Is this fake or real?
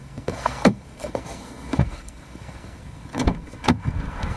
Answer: fake